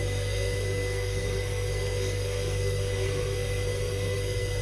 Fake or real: fake